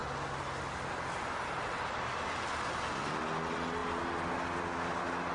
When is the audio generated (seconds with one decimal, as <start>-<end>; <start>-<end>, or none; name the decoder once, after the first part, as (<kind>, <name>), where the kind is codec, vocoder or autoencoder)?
none